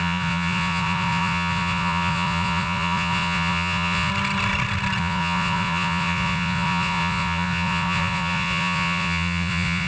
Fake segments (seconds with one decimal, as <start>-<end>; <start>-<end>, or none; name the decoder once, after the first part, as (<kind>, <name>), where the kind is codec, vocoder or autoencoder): 0.0-4.1 (vocoder, Vocos); 5.0-9.9